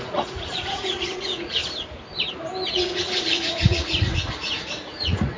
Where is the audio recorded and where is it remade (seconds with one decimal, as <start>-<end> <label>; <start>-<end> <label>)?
0.0-1.6 remade; 1.6-2.7 recorded; 2.7-5.4 remade